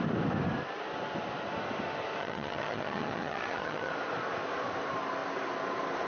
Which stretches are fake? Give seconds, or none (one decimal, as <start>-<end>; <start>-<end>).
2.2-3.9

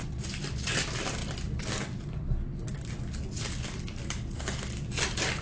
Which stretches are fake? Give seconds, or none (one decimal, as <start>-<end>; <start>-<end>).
none

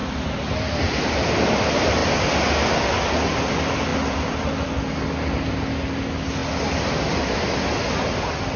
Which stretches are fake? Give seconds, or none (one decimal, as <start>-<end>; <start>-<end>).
none

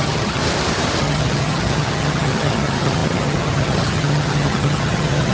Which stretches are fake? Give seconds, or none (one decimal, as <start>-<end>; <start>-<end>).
0.0-0.4; 1.0-5.3

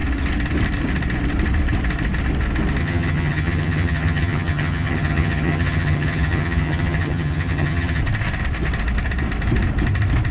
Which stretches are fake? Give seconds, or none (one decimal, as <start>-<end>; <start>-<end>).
2.8-8.0